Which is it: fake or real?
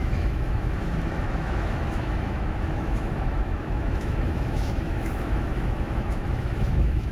fake